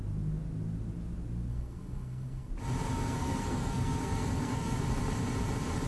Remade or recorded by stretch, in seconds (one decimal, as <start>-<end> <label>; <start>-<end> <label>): 0.0-1.5 recorded; 1.5-2.5 remade; 2.5-2.9 recorded; 2.9-4.8 remade; 4.8-5.9 recorded